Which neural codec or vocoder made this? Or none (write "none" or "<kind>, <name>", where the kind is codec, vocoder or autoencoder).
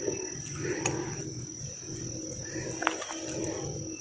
none